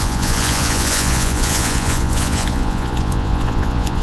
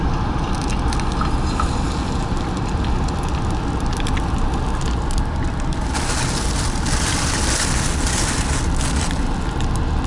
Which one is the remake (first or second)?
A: first